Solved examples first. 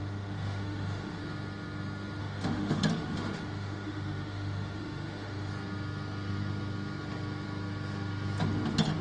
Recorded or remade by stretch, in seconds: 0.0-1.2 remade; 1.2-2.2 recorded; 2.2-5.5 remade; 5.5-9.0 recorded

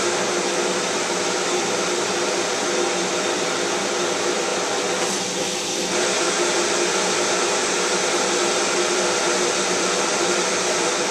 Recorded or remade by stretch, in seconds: 0.0-11.1 remade

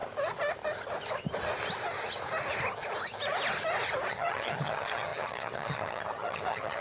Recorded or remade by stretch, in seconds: 0.0-4.1 recorded; 4.1-6.8 remade